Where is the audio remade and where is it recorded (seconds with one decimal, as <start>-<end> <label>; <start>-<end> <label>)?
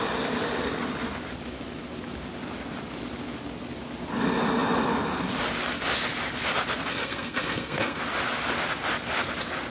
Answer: 0.0-6.9 recorded; 6.9-8.0 remade; 8.0-9.7 recorded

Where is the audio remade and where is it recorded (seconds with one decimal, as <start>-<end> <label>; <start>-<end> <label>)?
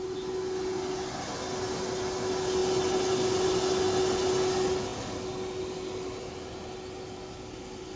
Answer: 0.0-8.0 recorded